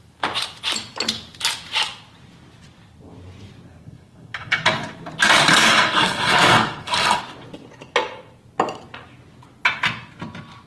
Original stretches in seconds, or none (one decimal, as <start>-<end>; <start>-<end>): 0.0-3.8; 4.6-5.5; 7.2-10.7